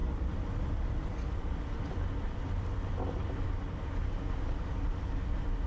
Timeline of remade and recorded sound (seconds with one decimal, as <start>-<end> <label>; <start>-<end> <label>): 0.0-3.4 remade; 3.4-5.7 recorded